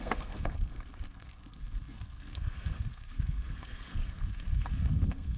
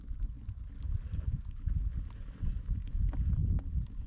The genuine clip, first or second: second